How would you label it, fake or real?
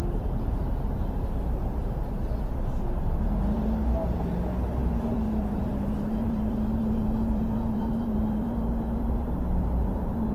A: fake